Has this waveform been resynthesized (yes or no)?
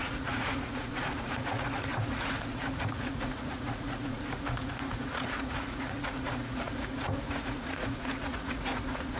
yes